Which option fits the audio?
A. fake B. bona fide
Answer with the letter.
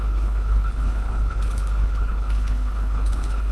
A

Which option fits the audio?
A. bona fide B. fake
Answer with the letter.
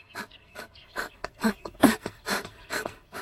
B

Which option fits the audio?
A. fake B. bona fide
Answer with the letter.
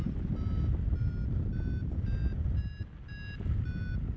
B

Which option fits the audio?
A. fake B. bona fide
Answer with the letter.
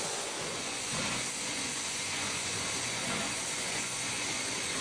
A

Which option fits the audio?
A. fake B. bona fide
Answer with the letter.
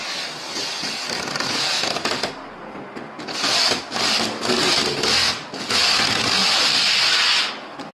B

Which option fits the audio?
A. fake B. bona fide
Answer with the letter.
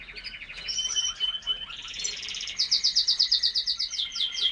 A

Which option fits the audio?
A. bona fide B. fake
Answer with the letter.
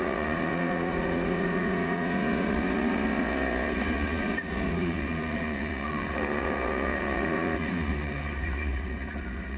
B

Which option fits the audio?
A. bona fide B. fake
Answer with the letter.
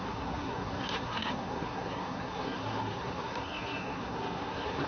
B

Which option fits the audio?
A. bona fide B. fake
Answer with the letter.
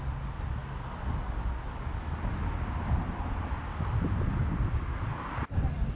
A